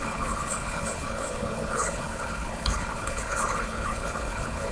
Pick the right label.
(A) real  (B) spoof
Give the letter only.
B